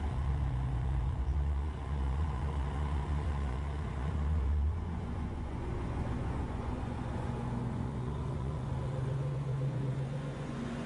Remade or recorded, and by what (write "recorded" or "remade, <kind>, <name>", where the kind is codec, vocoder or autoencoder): remade, vocoder, Vocos